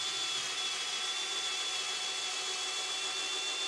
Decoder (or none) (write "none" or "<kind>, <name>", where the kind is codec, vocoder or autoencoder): none